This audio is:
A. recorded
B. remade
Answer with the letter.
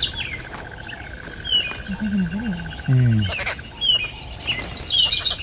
A